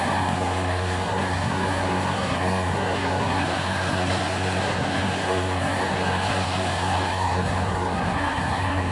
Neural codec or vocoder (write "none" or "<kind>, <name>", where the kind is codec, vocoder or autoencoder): codec, SNAC